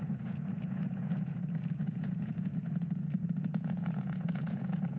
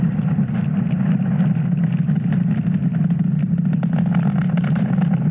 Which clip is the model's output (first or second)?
first